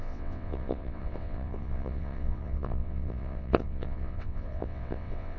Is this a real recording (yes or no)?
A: no